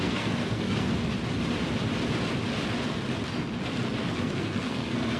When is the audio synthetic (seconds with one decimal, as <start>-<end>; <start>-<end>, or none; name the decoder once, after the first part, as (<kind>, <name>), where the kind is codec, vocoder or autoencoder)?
0.0-0.9 (codec, SNAC); 4.0-5.2